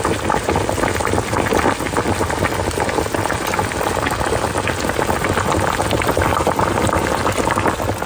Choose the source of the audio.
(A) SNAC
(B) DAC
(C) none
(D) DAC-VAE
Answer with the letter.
C